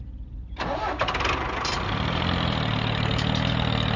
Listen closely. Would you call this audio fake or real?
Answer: real